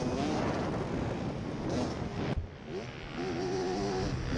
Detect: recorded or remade recorded